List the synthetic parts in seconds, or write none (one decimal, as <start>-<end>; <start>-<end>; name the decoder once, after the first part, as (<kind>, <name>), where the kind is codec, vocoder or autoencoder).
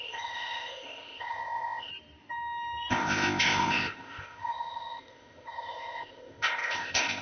0.0-1.9 (codec, ZipCodec); 2.9-7.2